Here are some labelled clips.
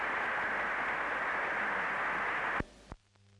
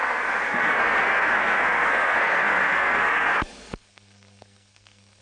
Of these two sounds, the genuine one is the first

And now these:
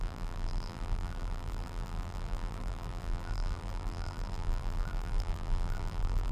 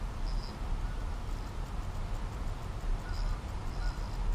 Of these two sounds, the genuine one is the second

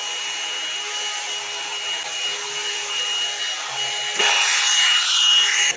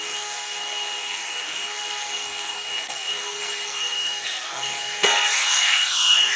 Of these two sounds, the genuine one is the first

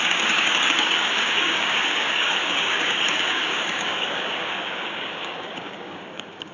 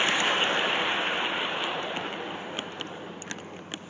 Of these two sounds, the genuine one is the second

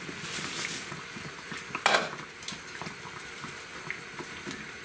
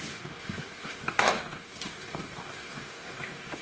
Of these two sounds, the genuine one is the first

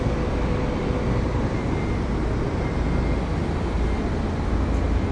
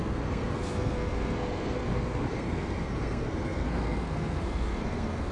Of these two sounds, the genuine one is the first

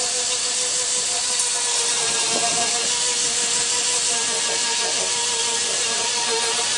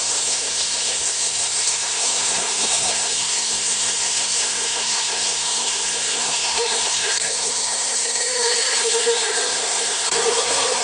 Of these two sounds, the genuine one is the first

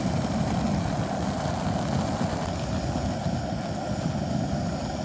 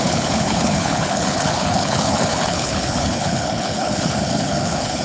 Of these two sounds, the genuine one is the first